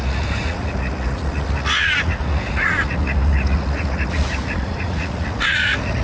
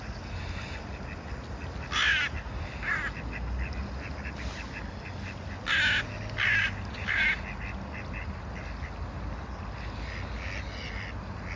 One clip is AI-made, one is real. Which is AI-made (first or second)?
first